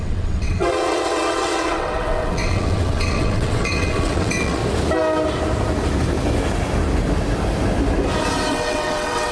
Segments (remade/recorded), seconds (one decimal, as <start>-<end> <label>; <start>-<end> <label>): 0.0-4.6 remade; 4.6-8.5 recorded; 8.5-9.3 remade

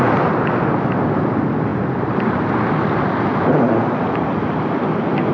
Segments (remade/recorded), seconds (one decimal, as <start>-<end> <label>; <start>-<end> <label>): 0.0-5.3 recorded